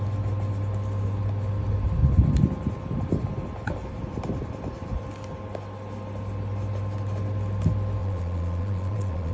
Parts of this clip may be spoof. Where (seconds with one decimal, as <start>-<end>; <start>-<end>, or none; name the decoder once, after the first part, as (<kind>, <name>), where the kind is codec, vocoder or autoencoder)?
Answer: 8.0-9.3 (vocoder, Vocos)